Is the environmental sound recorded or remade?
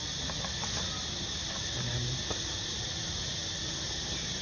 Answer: recorded